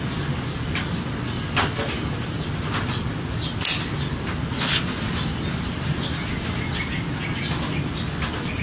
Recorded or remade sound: recorded